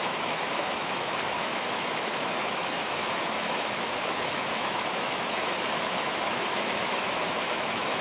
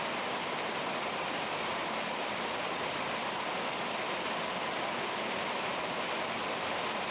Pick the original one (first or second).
second